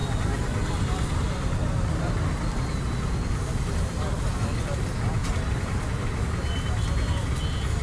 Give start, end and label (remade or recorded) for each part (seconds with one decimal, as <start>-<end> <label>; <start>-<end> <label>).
0.0-2.0 remade; 2.0-5.2 recorded; 5.2-6.0 remade; 6.0-7.8 recorded